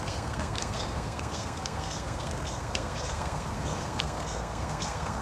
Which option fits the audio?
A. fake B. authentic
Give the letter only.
A